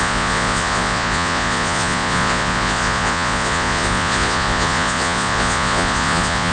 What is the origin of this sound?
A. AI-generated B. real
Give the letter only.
A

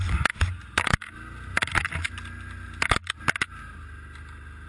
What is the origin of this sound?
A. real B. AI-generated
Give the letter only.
A